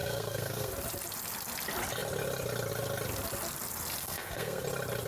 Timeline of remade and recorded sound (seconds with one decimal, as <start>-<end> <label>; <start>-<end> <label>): 0.0-0.7 remade; 0.7-4.0 recorded; 4.0-4.6 remade; 4.6-5.1 recorded